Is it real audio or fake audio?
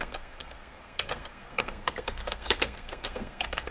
fake